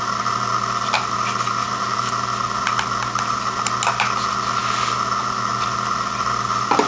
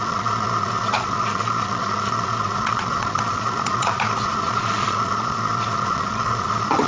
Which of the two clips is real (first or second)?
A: first